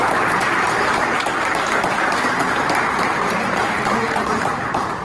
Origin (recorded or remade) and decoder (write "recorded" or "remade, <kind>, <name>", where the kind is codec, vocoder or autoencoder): remade, vocoder, BigVGAN v2